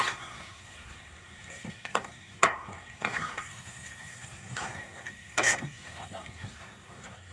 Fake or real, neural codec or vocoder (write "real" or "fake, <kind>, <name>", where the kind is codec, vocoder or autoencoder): fake, codec, SNAC